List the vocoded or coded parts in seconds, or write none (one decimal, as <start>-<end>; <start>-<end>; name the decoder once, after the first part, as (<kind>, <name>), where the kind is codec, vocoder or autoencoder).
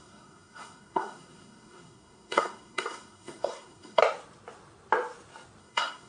0.0-4.0 (codec, SNAC); 5.6-6.1